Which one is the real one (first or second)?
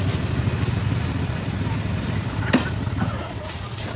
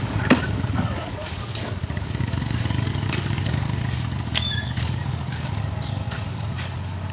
first